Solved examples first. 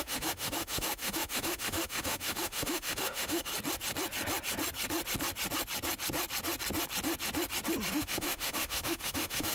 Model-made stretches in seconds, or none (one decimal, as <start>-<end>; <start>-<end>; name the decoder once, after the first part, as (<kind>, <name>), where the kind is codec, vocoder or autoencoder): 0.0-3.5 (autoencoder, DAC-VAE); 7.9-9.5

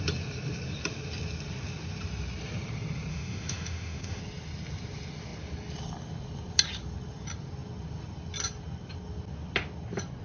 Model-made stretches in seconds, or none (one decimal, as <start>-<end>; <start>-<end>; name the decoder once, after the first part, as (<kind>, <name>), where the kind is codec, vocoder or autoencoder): 3.1-4.2 (autoencoder, DAC-VAE)

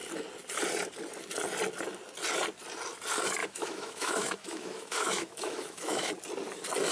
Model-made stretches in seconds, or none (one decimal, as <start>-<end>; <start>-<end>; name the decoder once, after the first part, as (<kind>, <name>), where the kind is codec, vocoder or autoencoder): 3.4-6.1 (autoencoder, DAC-VAE)

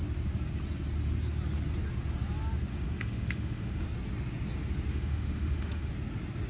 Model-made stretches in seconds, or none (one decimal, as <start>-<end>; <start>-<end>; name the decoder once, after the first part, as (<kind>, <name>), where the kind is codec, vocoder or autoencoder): 2.7-3.8 (autoencoder, DAC-VAE); 4.9-5.9

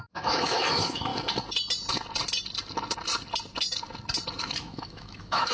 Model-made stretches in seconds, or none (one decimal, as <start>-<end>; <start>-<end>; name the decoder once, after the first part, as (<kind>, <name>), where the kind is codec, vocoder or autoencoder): 0.0-1.1 (autoencoder, DAC-VAE); 4.4-5.5

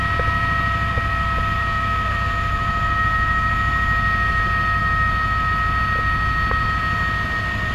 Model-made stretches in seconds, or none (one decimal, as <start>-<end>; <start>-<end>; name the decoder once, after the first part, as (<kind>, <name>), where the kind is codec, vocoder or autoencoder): 1.6-3.5 (autoencoder, DAC-VAE); 4.8-5.5

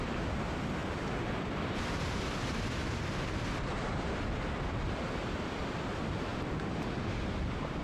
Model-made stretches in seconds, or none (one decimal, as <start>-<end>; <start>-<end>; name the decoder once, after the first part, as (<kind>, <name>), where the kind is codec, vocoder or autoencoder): none

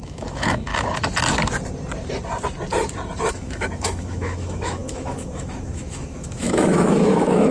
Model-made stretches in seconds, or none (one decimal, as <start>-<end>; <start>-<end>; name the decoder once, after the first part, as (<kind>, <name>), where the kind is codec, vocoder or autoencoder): 0.0-0.7 (autoencoder, DAC-VAE); 3.3-7.5